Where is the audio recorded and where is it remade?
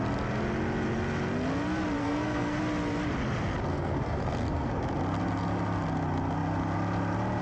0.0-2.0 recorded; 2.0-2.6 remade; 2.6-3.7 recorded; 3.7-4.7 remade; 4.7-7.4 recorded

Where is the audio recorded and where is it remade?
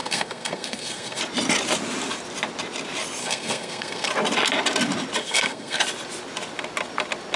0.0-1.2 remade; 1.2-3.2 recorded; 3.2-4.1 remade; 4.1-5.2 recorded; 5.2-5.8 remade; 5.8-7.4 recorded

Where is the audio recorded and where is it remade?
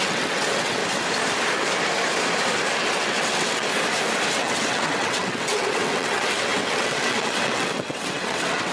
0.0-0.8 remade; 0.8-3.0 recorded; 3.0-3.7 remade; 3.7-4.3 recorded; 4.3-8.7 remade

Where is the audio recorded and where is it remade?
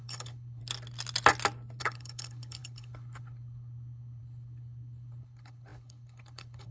0.0-0.6 remade; 0.6-1.8 recorded; 1.8-6.7 remade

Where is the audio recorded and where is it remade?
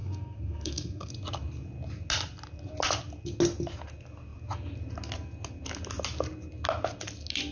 0.0-1.1 remade; 1.1-7.5 recorded